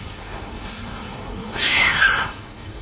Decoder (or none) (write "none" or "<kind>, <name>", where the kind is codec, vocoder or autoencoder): codec, SNAC